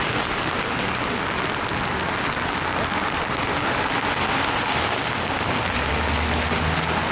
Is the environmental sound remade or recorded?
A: recorded